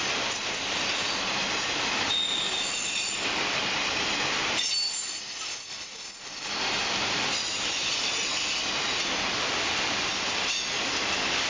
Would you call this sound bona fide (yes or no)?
yes